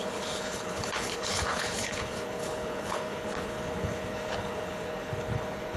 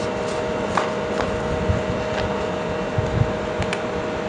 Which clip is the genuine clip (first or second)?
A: second